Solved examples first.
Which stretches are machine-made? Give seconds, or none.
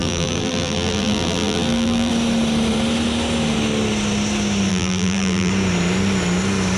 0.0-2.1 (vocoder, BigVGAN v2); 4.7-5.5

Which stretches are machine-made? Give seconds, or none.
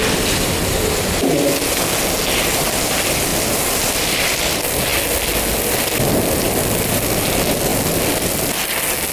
none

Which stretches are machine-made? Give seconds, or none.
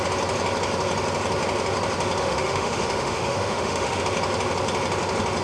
2.2-4.0 (autoencoder, DAC-VAE)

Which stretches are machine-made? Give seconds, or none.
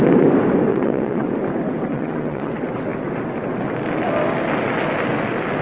0.7-1.3 (vocoder, WaveNeXt); 1.9-2.5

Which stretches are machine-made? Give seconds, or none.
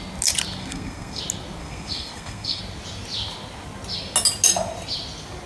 0.6-1.2 (codec, SNAC); 1.6-2.6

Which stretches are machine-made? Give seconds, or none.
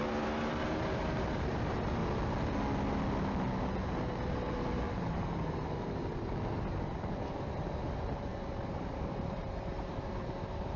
0.0-2.0 (vocoder, BigVGAN v2); 4.1-10.8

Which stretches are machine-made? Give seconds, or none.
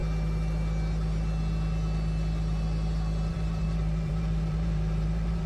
3.3-5.5 (vocoder, BigVGAN v2)